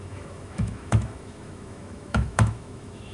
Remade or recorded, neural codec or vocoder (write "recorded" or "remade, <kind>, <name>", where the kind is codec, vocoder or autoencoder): remade, autoencoder, DAC-VAE